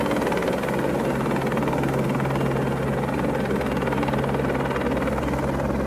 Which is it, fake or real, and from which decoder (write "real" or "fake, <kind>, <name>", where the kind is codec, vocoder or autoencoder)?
real